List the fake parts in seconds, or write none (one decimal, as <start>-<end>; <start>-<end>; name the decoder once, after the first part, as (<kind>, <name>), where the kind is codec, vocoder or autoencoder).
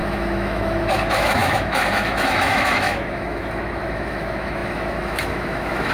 0.0-5.9 (autoencoder, DAC-VAE)